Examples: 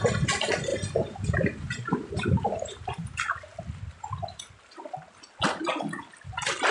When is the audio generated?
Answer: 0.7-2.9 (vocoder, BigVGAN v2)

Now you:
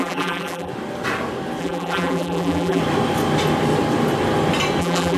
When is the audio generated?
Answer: 0.0-0.7 (vocoder, BigVGAN v2); 1.6-2.8; 4.8-5.2

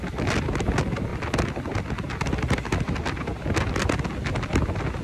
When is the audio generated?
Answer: none

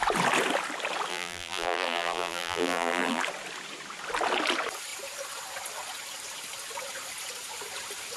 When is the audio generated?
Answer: 1.1-3.2 (vocoder, BigVGAN v2)

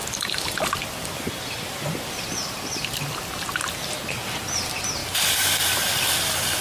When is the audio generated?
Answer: 5.0-6.6 (vocoder, BigVGAN v2)

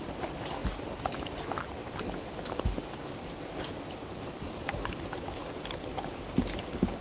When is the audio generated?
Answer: none